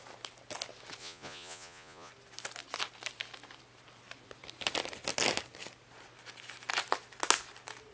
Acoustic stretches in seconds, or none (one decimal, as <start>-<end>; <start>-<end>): 0.0-1.0; 2.1-7.9